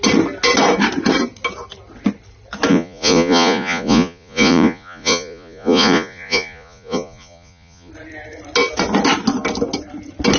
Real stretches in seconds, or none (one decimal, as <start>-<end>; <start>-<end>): 0.0-2.7; 7.9-10.4